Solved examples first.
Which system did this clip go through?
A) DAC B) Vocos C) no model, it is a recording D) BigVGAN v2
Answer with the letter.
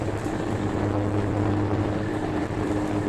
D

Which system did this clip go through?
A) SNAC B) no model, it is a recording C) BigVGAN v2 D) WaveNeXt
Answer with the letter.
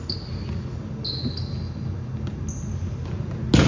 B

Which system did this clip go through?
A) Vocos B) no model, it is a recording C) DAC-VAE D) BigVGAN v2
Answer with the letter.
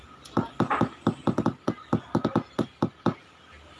B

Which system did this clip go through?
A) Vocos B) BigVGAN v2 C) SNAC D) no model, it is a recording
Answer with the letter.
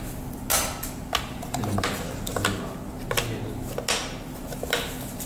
D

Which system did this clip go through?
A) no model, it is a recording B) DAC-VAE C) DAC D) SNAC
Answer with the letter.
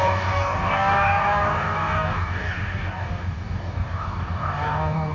C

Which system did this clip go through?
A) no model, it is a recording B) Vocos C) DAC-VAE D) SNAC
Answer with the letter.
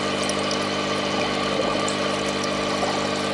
A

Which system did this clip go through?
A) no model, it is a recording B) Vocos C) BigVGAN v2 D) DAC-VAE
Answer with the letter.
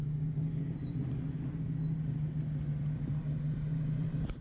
A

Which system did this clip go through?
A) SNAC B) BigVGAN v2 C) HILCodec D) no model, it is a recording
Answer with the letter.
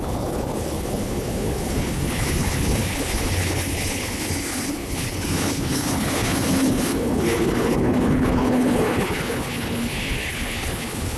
C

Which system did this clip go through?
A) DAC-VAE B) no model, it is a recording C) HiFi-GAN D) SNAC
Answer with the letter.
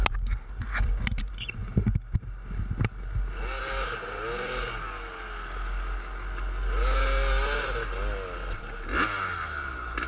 B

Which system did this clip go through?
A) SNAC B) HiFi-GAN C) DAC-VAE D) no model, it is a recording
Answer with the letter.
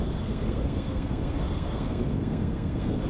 A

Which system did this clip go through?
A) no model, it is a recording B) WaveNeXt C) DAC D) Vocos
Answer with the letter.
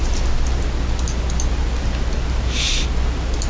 A